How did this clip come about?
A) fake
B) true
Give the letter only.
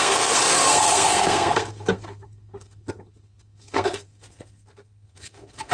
A